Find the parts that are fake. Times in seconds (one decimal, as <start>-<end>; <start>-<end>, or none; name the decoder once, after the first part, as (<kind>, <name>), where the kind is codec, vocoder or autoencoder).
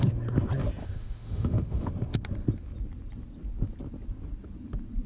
0.8-1.9 (autoencoder, DAC-VAE)